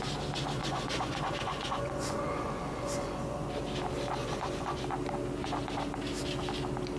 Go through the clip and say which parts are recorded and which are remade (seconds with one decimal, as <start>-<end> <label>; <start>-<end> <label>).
0.0-0.6 recorded; 0.6-3.5 remade; 3.5-4.2 recorded; 4.2-4.8 remade; 4.8-7.0 recorded